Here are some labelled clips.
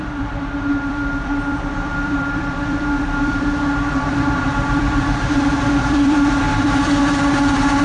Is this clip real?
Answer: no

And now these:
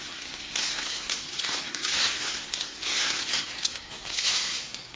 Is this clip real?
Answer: no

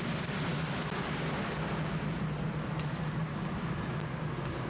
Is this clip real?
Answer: yes